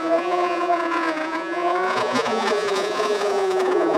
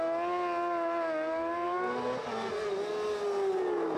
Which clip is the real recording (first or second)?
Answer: second